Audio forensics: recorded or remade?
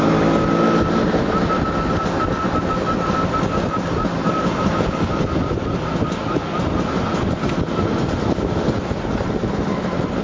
recorded